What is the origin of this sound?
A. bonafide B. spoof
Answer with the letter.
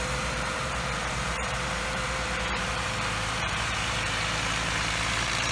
B